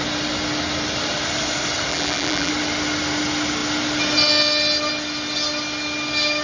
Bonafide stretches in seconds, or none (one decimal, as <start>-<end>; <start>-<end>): 0.0-1.9; 2.5-6.4